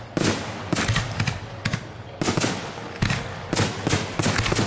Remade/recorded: recorded